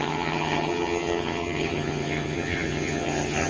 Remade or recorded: remade